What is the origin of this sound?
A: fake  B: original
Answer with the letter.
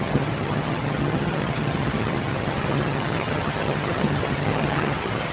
A